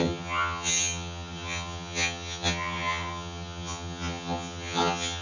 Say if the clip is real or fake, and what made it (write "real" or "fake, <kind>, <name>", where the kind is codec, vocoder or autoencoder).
fake, vocoder, HiFi-GAN